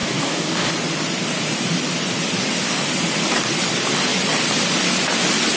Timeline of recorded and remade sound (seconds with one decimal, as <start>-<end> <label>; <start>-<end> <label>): 0.0-0.7 remade; 0.7-5.6 recorded